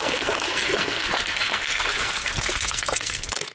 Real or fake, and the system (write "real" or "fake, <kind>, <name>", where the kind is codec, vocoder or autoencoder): fake, codec, SNAC